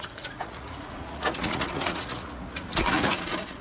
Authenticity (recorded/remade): remade